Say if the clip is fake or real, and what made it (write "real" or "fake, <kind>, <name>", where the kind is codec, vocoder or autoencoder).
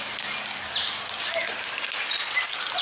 real